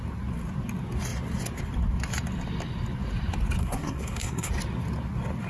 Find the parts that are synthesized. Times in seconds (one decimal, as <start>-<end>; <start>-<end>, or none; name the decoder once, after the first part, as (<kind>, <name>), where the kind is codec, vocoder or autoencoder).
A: 3.6-4.5 (codec, SNAC)